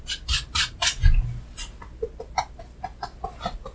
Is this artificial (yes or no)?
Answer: no